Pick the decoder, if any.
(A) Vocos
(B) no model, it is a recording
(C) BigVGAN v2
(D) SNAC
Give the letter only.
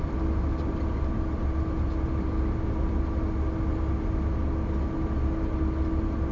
B